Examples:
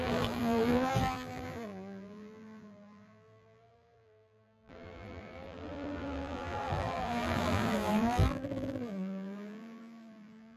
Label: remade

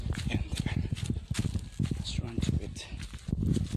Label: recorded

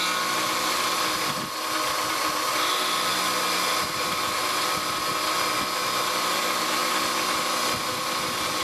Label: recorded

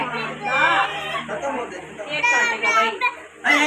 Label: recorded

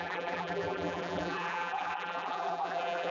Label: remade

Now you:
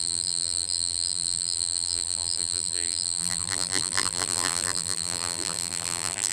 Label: remade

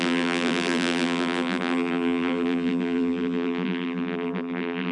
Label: remade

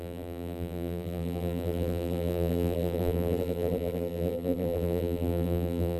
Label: remade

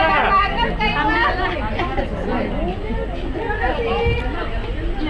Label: recorded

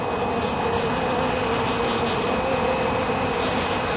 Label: recorded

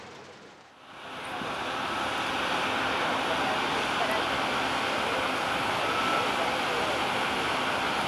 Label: recorded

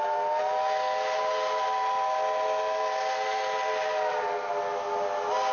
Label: recorded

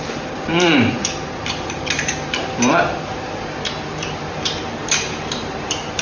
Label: remade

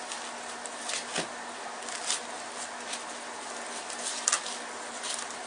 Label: recorded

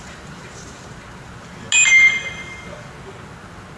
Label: recorded